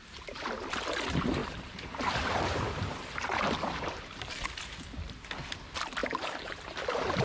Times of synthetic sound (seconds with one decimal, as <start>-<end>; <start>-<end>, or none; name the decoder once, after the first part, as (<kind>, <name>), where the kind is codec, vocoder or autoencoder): 1.4-4.3 (vocoder, BigVGAN v2); 6.0-6.8